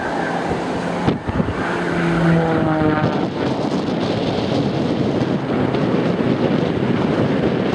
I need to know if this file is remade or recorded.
recorded